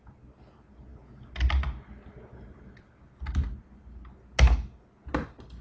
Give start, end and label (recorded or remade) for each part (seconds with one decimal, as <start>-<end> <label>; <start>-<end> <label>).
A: 0.0-5.6 recorded